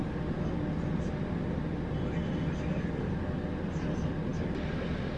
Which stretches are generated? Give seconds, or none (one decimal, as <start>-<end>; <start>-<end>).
none